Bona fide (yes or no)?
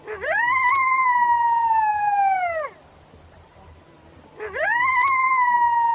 yes